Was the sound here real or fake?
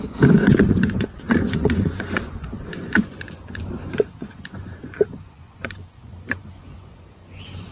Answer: fake